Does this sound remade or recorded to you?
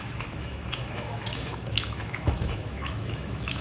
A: remade